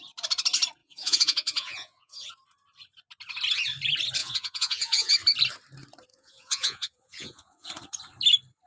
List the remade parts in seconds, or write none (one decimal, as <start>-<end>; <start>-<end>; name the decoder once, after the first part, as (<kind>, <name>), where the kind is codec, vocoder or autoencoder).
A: 0.8-2.3 (vocoder, Vocos); 4.2-5.1; 6.1-7.7